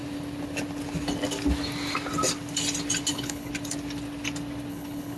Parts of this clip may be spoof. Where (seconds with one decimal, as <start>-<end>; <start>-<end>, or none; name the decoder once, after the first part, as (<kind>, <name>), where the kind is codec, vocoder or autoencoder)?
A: 3.1-3.5 (codec, HILCodec); 4.7-5.2